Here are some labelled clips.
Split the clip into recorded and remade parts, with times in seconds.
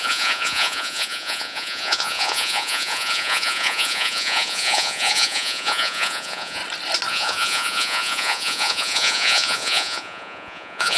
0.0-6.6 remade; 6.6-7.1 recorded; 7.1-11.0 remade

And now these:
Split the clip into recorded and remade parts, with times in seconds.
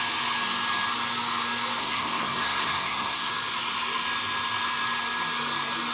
0.0-1.8 recorded; 1.8-3.3 remade; 3.3-5.9 recorded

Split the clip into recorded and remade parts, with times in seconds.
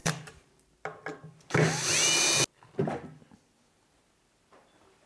0.0-0.7 remade; 0.7-5.1 recorded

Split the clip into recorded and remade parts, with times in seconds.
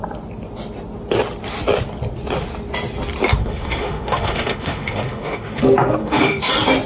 0.0-3.4 recorded; 3.4-5.6 remade; 5.6-6.0 recorded; 6.0-6.5 remade; 6.5-6.9 recorded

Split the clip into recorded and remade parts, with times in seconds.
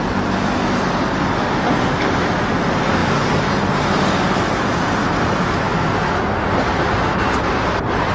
0.0-8.1 recorded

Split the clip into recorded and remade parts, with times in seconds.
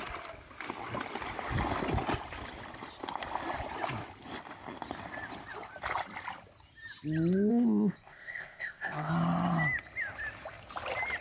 0.0-7.5 recorded; 7.5-9.1 remade; 9.1-11.2 recorded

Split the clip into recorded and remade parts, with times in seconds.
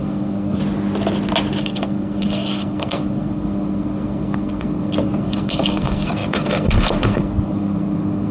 0.0-0.6 remade; 0.6-1.6 recorded; 1.6-8.3 remade